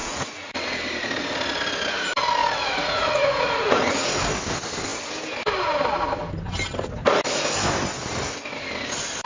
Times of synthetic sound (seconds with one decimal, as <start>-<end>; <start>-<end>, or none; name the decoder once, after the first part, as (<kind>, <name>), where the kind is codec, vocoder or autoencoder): 0.0-0.5 (vocoder, Vocos); 2.4-4.2